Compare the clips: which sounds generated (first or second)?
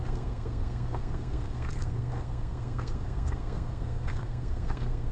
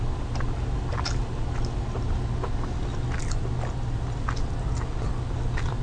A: first